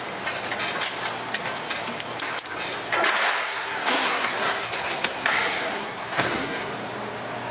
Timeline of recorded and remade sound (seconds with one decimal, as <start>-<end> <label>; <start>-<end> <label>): 0.0-3.4 recorded; 3.4-6.7 remade; 6.7-7.5 recorded